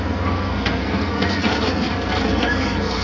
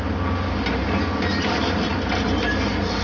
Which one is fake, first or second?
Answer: first